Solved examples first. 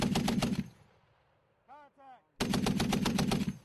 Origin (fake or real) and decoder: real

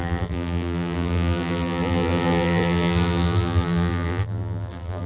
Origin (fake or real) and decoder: fake, vocoder, BigVGAN v2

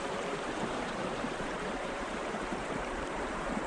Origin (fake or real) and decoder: fake, vocoder, BigVGAN v2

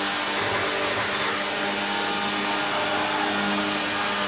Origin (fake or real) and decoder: real